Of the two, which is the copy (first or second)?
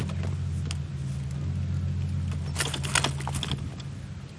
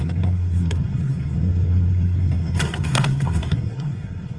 second